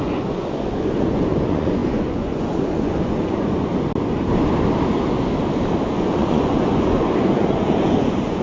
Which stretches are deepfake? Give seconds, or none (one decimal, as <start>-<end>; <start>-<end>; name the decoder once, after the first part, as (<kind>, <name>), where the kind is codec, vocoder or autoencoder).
0.0-3.7 (vocoder, Vocos); 5.9-8.4